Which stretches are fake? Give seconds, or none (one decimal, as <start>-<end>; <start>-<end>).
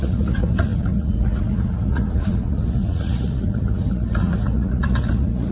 0.0-5.5